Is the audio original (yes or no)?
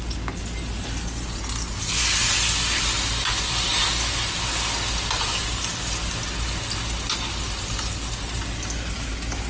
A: yes